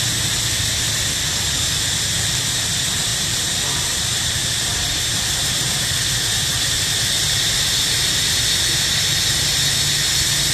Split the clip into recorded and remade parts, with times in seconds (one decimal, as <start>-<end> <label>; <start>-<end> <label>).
0.0-3.1 recorded; 3.1-5.9 remade; 5.9-10.5 recorded